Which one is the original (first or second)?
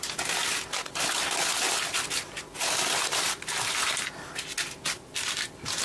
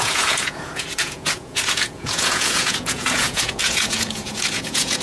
first